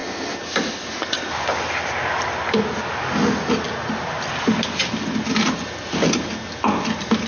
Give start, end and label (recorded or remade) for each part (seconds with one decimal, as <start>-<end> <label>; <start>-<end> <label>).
0.0-7.3 recorded